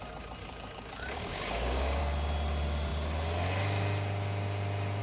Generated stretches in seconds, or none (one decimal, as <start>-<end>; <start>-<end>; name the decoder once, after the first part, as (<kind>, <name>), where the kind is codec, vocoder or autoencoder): 0.4-2.0 (codec, DAC)